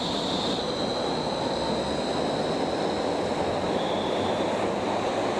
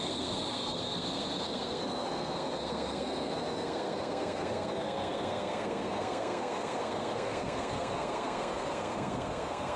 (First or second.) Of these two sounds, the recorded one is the first